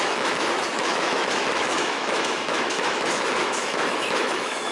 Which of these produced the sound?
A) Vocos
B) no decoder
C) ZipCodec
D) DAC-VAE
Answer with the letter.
D